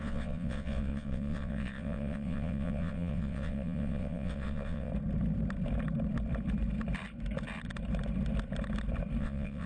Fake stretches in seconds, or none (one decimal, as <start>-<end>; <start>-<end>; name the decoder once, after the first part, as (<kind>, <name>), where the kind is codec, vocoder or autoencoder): 0.0-4.9 (vocoder, WaveNeXt); 9.2-9.7

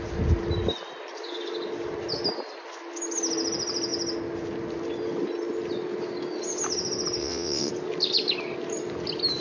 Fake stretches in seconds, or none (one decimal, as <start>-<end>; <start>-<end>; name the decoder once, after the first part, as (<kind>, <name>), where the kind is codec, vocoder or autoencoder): 7.2-7.7 (vocoder, WaveNeXt)

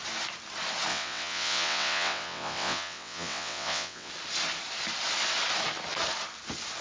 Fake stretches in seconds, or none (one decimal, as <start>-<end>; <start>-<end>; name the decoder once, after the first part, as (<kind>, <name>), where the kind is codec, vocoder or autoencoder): 0.9-4.1 (vocoder, WaveNeXt)